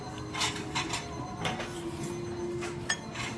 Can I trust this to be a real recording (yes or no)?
yes